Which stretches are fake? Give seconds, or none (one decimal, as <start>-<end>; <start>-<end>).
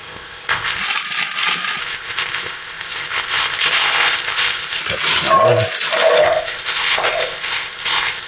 0.0-0.8; 1.8-4.8; 6.2-8.3